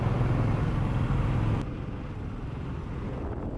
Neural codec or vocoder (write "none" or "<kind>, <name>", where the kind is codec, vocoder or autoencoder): none